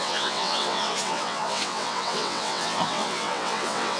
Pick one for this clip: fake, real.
fake